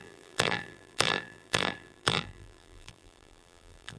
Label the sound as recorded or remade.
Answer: remade